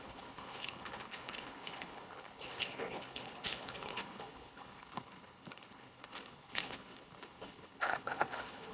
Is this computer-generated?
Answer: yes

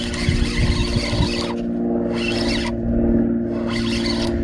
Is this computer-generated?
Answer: no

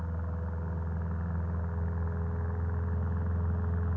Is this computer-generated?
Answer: no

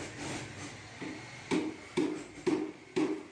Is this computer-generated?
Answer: no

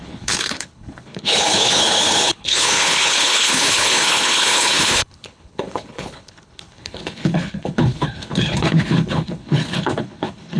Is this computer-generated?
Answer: yes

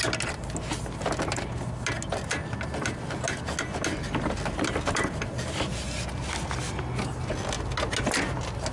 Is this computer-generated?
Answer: no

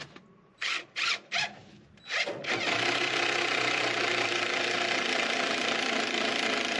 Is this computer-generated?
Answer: no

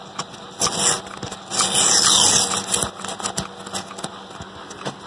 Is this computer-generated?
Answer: no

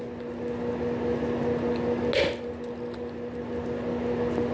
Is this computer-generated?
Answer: no